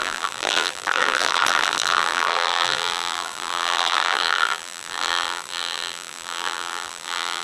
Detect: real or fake fake